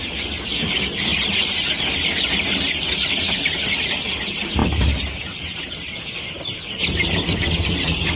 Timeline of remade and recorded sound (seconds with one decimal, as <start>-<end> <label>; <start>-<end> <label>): 0.0-8.2 recorded

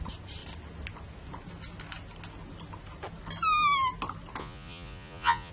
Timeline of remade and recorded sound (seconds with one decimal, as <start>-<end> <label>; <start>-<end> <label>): 0.0-4.4 recorded; 4.4-5.5 remade

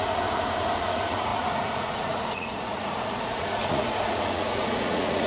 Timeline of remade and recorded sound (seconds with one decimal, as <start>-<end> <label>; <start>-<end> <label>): 0.0-5.3 remade

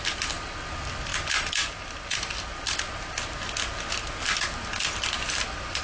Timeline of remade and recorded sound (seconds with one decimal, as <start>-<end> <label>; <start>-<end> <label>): 0.0-5.8 recorded

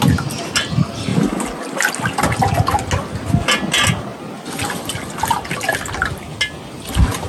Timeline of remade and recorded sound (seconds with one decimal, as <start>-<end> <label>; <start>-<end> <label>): 0.0-7.3 recorded

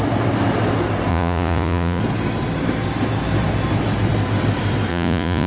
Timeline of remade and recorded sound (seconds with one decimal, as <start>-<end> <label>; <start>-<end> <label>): 0.0-1.1 recorded; 1.1-2.0 remade; 2.0-4.9 recorded; 4.9-5.5 remade